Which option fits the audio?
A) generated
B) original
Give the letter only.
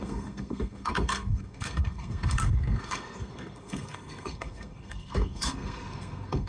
A